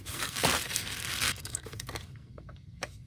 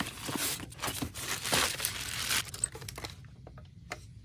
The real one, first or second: second